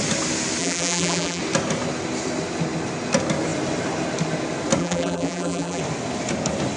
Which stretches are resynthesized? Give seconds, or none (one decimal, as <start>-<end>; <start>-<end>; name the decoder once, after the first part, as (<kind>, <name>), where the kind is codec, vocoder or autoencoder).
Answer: 0.6-1.4 (vocoder, BigVGAN v2); 4.8-5.8